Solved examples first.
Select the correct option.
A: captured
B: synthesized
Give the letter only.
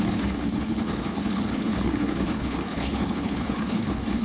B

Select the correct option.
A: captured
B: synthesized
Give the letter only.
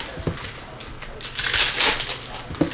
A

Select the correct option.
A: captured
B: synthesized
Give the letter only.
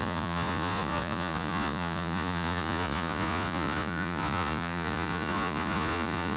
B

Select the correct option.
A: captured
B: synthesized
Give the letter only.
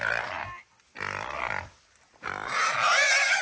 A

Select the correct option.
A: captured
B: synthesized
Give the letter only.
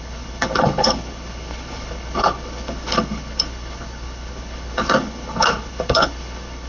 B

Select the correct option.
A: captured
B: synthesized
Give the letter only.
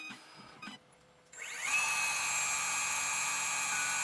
A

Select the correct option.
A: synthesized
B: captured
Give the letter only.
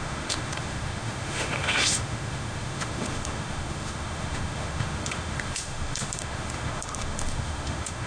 A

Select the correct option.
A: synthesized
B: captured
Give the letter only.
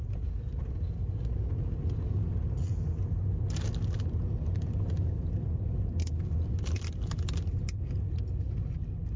B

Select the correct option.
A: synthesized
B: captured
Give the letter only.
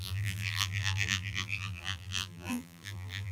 A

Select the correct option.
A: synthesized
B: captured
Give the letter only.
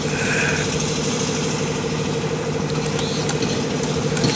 B